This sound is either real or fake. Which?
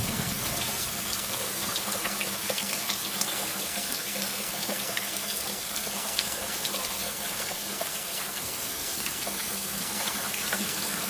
fake